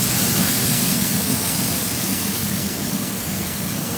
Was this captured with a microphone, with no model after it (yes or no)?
no